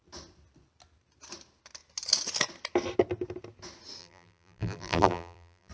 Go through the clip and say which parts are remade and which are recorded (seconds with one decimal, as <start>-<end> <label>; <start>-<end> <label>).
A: 0.0-4.0 recorded; 4.0-5.7 remade